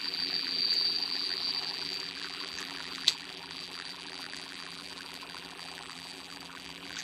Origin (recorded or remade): remade